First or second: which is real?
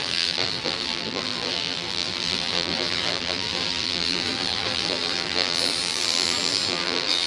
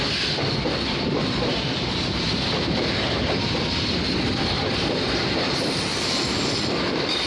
second